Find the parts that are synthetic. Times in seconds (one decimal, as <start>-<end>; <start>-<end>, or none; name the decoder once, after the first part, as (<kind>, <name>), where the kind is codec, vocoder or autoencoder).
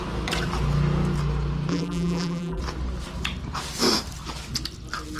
1.7-2.6 (vocoder, BigVGAN v2)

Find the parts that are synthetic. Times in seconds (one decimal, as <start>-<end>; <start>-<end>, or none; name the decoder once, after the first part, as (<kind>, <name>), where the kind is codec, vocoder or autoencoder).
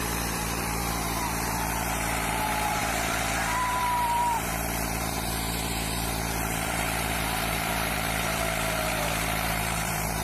0.0-10.2 (vocoder, BigVGAN v2)